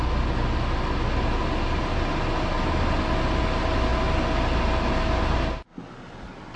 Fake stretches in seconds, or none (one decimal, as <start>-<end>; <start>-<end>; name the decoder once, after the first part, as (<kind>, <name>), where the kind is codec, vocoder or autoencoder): none

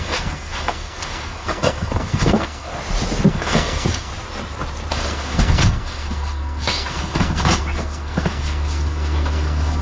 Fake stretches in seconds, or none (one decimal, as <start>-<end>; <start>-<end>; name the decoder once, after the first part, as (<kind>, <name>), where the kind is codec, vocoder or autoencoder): 0.0-2.7 (codec, SNAC); 3.3-4.1; 4.9-9.8

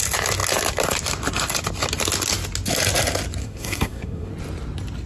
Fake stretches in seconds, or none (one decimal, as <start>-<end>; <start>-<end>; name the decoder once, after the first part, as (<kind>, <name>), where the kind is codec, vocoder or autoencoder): 3.4-4.3 (codec, SNAC)

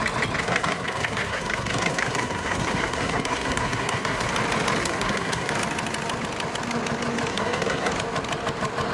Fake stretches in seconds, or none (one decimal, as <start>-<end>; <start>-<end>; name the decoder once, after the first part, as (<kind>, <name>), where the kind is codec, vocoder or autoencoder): 0.4-4.3 (codec, SNAC); 4.8-5.5; 7.3-7.9